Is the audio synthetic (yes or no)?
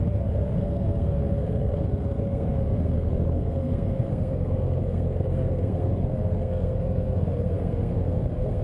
yes